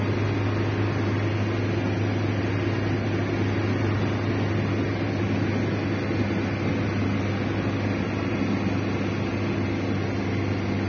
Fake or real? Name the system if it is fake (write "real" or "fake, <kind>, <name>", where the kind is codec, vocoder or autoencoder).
real